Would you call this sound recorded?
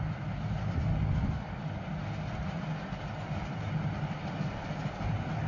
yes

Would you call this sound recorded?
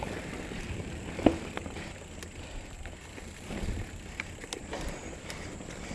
no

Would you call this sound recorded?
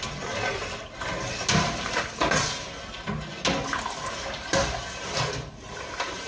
yes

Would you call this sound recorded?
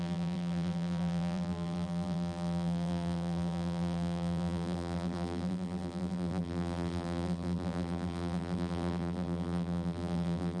no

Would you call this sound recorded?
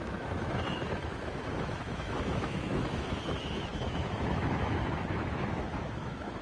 no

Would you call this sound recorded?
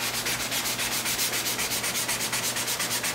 yes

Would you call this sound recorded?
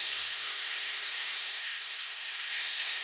no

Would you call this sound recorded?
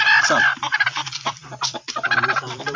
no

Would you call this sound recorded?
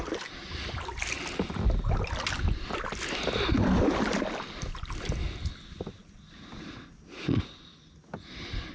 yes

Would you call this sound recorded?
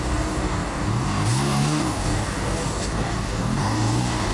no